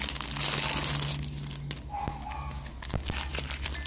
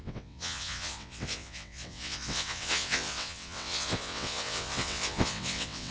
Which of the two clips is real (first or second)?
first